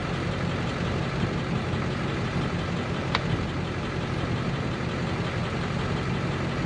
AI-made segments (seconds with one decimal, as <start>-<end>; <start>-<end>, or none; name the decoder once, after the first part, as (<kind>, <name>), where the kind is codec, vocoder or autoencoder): none